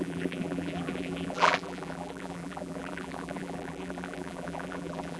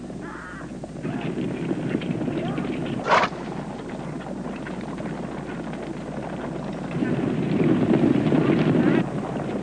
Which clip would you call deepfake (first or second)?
first